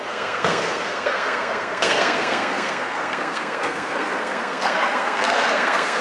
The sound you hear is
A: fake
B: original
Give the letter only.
A